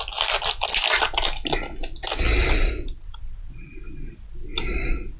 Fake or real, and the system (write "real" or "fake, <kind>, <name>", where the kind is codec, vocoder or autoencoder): real